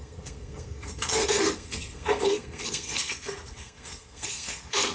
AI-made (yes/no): yes